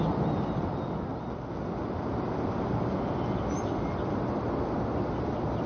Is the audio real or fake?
real